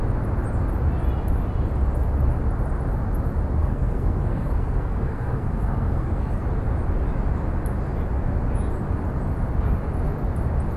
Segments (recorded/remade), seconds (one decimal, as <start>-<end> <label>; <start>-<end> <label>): 0.0-3.6 recorded; 3.6-6.4 remade; 6.4-10.8 recorded